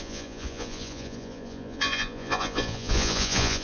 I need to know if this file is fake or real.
fake